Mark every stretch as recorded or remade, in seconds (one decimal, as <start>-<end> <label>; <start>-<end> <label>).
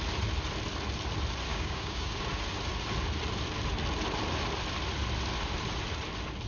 0.0-1.5 recorded; 1.5-2.2 remade; 2.2-6.5 recorded